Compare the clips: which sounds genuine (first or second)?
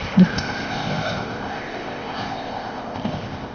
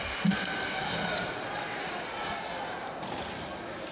second